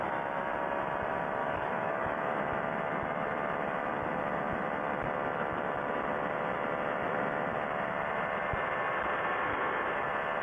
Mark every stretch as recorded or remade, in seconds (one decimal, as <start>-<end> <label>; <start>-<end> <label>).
0.0-1.4 recorded; 1.4-2.4 remade; 2.4-10.4 recorded